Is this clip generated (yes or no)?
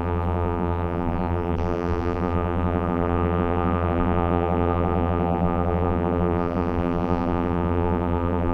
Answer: yes